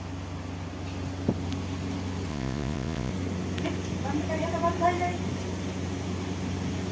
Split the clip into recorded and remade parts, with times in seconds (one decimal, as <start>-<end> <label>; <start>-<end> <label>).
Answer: 0.0-2.3 recorded; 2.3-3.1 remade; 3.1-6.9 recorded